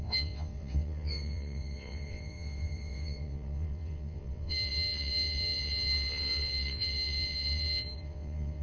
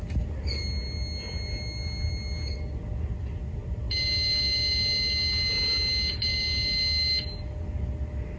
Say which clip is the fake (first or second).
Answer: first